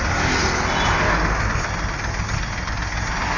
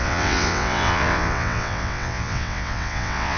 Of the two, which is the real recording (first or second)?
first